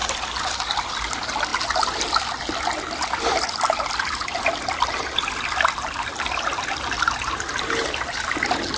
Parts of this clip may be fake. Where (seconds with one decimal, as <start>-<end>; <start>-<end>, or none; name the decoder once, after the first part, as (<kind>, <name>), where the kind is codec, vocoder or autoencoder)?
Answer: none

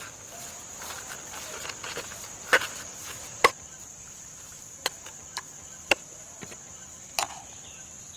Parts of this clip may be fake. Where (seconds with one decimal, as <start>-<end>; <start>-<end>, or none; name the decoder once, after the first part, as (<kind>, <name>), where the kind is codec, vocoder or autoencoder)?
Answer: 2.5-7.0 (vocoder, BigVGAN v2)

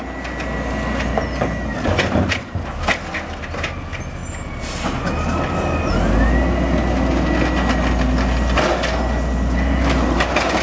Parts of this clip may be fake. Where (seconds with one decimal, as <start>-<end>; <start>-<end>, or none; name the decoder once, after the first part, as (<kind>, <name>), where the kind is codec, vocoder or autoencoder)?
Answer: none

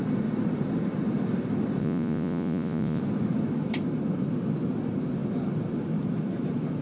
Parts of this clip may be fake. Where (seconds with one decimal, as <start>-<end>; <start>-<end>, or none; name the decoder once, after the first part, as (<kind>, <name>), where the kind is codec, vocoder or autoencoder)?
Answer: 1.8-3.0 (vocoder, Vocos)

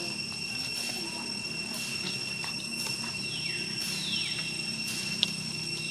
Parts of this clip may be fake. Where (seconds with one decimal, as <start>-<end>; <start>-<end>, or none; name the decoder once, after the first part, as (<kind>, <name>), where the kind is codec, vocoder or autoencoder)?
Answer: none

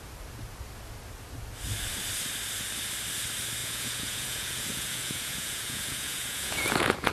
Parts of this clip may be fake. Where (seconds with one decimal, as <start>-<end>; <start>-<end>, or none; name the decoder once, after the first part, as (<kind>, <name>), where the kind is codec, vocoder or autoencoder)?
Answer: 3.6-7.1 (vocoder, Vocos)

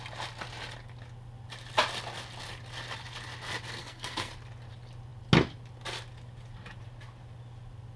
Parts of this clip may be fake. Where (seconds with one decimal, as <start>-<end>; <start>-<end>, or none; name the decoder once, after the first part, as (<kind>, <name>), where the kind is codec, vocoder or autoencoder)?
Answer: 3.8-4.3 (codec, SNAC)